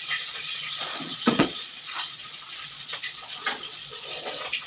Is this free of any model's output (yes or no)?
no